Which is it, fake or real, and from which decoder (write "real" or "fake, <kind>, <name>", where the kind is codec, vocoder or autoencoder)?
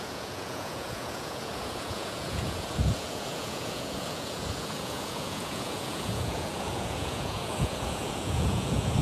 fake, vocoder, Vocos